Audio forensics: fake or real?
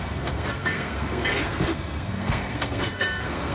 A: fake